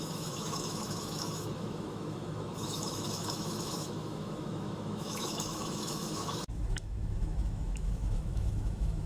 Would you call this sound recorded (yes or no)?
no